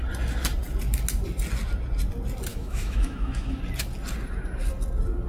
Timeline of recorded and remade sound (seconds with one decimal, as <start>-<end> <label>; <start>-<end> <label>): 0.0-2.5 recorded; 2.5-3.6 remade; 3.6-5.3 recorded